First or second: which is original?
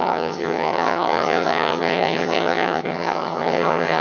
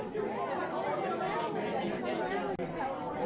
second